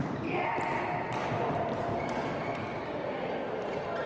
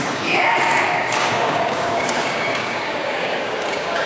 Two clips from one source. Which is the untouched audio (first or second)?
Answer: first